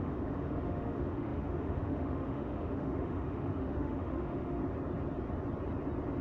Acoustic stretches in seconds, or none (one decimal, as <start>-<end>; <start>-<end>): 4.6-6.2